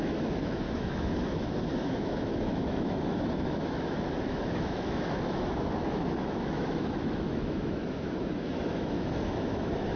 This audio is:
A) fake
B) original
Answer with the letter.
A